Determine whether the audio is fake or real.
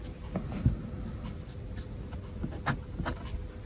real